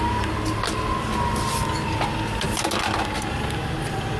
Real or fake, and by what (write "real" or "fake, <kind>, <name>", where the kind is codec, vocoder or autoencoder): real